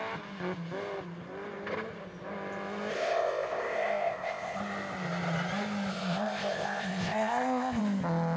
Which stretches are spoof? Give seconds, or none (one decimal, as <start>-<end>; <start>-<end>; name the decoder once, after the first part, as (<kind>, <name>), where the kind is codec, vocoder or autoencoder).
2.9-4.6 (codec, ZipCodec); 5.9-7.8